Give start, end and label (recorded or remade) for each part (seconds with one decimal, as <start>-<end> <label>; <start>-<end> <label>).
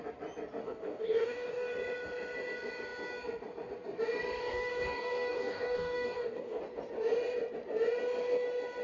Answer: 0.0-0.6 recorded; 0.6-1.7 remade; 1.7-4.4 recorded; 4.4-6.6 remade; 6.6-8.8 recorded